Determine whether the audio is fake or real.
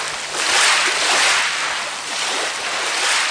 real